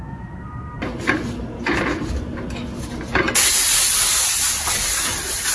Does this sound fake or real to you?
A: real